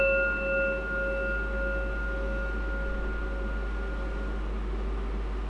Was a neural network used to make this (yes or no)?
no